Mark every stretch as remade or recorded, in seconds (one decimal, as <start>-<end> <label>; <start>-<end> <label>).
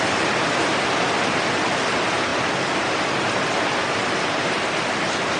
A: 0.0-5.4 recorded